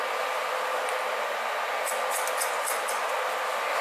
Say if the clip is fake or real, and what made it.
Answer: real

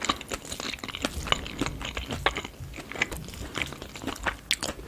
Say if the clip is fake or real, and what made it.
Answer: real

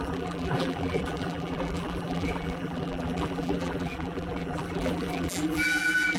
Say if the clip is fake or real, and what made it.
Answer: fake, vocoder, BigVGAN v2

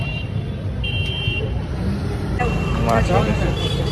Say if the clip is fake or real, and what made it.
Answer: fake, vocoder, BigVGAN v2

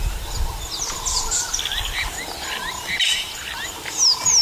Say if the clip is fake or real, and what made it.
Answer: fake, vocoder, BigVGAN v2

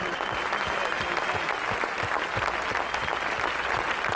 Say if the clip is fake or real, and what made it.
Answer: real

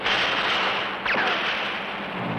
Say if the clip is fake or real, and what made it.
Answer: real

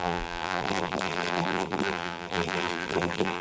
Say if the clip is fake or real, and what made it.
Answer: fake, vocoder, BigVGAN v2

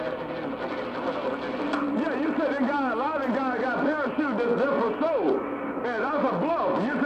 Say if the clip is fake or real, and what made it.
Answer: real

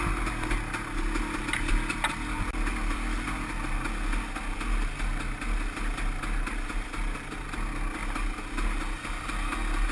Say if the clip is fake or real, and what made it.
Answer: real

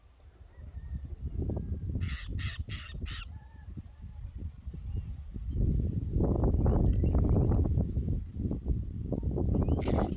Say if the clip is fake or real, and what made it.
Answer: real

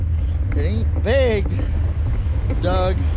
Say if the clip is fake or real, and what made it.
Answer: real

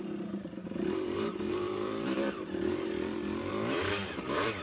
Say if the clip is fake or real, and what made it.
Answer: fake, vocoder, BigVGAN v2